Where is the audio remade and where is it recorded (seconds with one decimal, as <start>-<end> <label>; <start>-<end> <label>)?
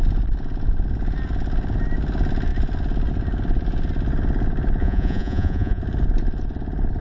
0.0-4.8 recorded; 4.8-5.8 remade; 5.8-7.0 recorded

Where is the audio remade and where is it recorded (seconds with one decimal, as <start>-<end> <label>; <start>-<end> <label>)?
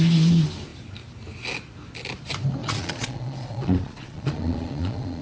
0.0-2.6 recorded; 2.6-5.2 remade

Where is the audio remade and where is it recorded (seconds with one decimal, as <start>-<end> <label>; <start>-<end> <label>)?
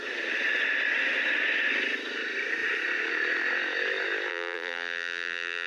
0.0-4.3 recorded; 4.3-5.7 remade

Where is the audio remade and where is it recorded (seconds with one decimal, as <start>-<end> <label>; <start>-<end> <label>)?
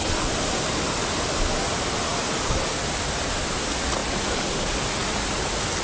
0.0-5.8 recorded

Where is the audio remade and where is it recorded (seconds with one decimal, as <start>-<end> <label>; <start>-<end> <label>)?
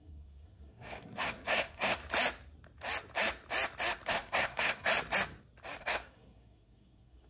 0.0-2.0 remade; 2.0-4.1 recorded; 4.1-4.9 remade; 4.9-5.8 recorded; 5.8-7.3 remade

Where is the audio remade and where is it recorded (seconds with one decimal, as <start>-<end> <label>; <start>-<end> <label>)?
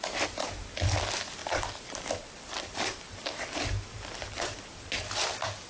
0.0-1.4 recorded; 1.4-4.8 remade; 4.8-5.7 recorded